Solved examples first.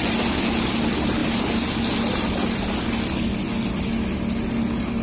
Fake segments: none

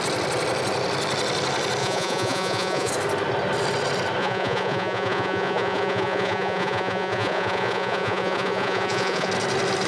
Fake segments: 1.8-2.9 (vocoder, Vocos); 4.2-9.3

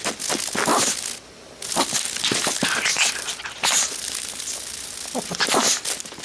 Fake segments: none

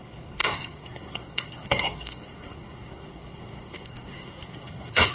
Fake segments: 0.0-5.1 (codec, SNAC)

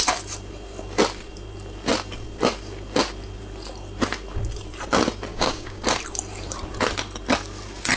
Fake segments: 5.3-5.8 (codec, DAC)

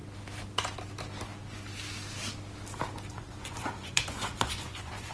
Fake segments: 3.1-5.1 (vocoder, Vocos)